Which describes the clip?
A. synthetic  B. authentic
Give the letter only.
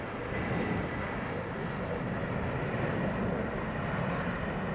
B